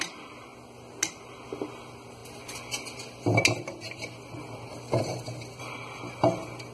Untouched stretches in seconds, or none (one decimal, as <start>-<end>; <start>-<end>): 0.0-6.7